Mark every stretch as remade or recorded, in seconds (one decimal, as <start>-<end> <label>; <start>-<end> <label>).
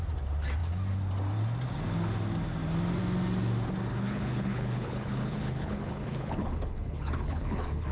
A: 0.0-3.9 recorded; 3.9-7.9 remade